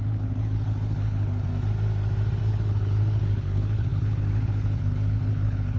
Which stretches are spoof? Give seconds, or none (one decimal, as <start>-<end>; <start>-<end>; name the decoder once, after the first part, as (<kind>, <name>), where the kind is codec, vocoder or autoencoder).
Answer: 0.0-1.5 (codec, HILCodec); 2.4-5.8